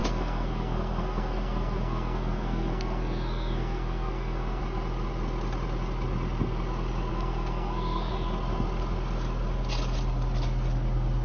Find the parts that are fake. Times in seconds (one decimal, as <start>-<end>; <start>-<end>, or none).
0.0-4.6; 7.1-8.1